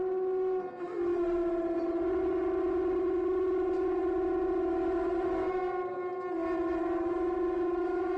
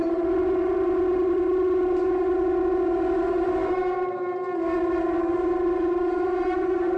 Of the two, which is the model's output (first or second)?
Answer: second